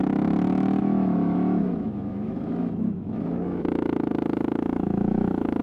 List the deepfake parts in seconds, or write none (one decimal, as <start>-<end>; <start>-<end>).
0.0-5.6